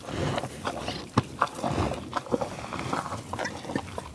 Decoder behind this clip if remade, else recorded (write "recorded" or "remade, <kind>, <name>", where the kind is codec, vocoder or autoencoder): recorded